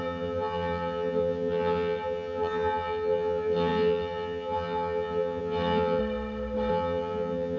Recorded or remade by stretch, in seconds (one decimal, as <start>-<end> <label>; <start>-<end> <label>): 0.0-6.0 remade; 6.0-6.7 recorded; 6.7-7.6 remade